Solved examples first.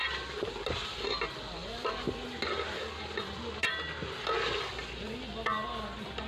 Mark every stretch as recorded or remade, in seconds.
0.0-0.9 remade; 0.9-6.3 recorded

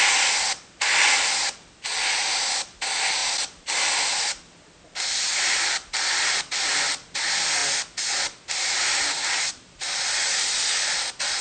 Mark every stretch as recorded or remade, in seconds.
0.0-11.4 recorded

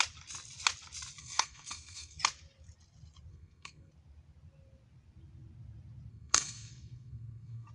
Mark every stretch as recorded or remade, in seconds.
0.0-1.2 recorded; 1.2-2.2 remade; 2.2-3.3 recorded; 3.3-3.9 remade; 3.9-6.1 recorded; 6.1-7.7 remade

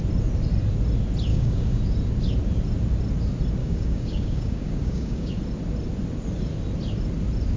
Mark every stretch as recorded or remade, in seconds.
0.0-1.3 recorded; 1.3-1.8 remade; 1.8-3.6 recorded; 3.6-5.3 remade; 5.3-7.6 recorded

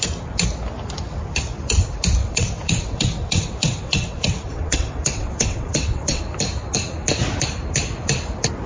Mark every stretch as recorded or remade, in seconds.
0.0-2.2 recorded; 2.2-6.2 remade; 6.2-8.7 recorded

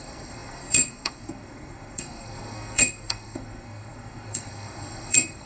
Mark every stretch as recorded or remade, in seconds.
0.0-5.5 remade

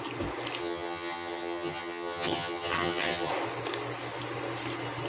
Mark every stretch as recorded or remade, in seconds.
0.0-0.6 recorded; 0.6-3.3 remade; 3.3-5.1 recorded

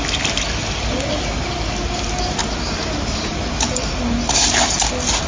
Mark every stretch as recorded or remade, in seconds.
0.0-2.4 recorded; 2.4-4.0 remade; 4.0-5.3 recorded